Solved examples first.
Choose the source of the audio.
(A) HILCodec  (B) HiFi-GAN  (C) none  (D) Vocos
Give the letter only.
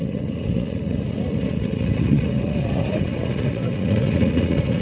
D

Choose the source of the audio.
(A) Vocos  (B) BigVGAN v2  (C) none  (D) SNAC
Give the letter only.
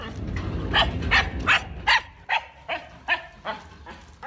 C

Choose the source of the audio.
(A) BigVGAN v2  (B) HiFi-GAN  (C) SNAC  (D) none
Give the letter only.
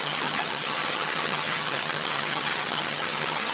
B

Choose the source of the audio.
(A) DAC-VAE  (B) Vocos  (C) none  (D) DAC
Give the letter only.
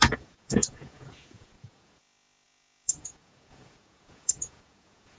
B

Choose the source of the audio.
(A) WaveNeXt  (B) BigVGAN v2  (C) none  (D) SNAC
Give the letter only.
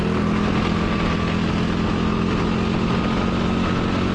C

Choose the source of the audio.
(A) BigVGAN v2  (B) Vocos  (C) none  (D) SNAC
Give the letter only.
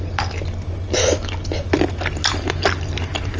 C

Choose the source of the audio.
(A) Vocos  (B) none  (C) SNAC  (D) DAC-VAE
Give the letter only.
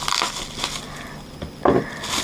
B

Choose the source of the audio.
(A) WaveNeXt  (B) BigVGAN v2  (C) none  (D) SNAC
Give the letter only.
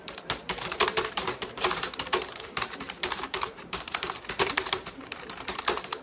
B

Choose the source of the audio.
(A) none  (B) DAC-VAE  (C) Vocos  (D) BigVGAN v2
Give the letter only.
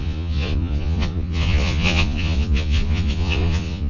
C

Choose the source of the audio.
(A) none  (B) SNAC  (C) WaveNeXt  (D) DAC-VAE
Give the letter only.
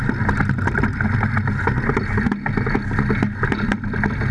A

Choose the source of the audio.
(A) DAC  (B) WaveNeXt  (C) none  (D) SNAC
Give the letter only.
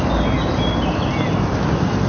C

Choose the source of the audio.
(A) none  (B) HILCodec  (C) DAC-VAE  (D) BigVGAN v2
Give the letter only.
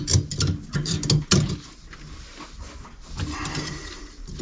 A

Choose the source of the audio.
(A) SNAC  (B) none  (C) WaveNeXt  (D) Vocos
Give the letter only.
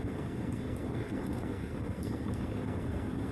A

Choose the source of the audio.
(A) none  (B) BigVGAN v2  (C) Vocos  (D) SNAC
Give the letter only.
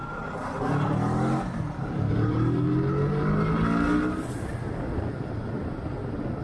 A